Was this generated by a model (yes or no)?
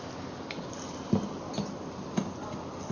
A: no